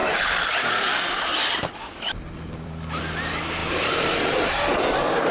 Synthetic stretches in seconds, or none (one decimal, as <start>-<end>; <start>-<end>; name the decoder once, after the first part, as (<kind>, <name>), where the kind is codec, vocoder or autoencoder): 0.0-3.0 (vocoder, BigVGAN v2); 3.6-4.3